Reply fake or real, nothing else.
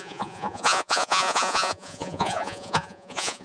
fake